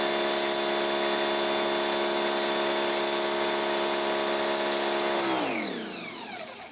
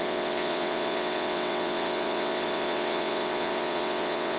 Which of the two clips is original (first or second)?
first